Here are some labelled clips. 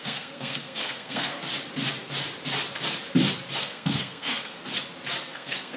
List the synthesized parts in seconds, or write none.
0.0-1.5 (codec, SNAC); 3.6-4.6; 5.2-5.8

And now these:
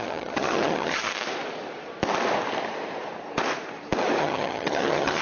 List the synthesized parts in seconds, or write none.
0.0-1.1 (vocoder, HiFi-GAN); 4.2-5.2

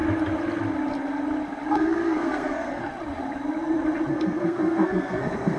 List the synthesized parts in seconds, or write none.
1.7-2.8 (codec, SNAC); 4.1-5.6